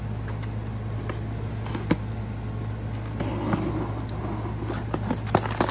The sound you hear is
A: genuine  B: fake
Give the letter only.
A